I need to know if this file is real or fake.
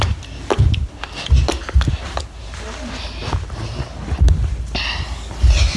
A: real